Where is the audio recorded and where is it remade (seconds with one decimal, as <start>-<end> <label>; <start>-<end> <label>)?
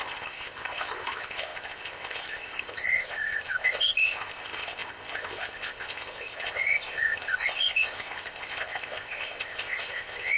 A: 0.0-10.4 remade